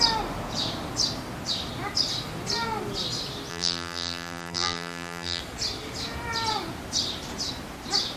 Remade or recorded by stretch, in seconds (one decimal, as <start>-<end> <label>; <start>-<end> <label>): 0.0-3.5 recorded; 3.5-5.4 remade; 5.4-8.2 recorded